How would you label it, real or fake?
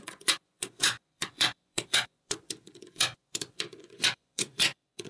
fake